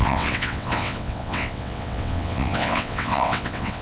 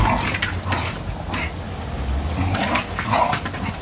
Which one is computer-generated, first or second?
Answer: first